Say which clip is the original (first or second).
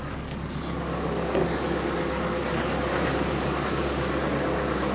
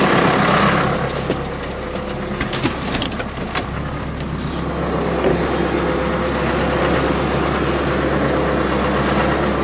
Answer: second